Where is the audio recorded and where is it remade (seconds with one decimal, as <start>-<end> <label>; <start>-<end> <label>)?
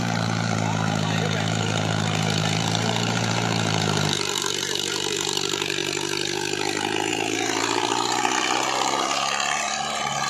0.0-5.8 remade; 5.8-7.1 recorded; 7.1-10.3 remade